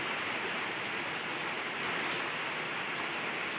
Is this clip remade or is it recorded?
recorded